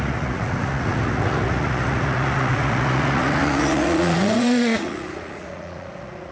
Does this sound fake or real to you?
fake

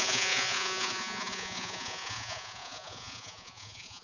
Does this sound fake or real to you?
fake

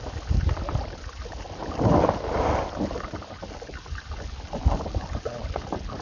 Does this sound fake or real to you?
real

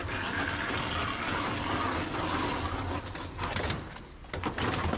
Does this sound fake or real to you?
real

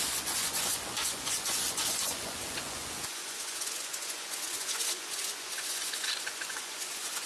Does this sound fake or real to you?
fake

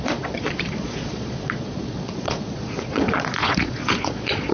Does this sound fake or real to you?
fake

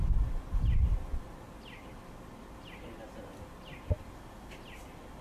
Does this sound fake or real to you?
real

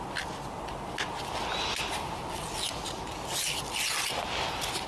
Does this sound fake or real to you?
real